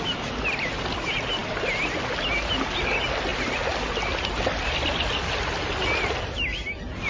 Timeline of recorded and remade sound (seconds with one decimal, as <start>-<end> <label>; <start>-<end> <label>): 0.0-7.1 recorded